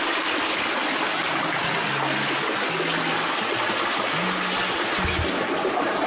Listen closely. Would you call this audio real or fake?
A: real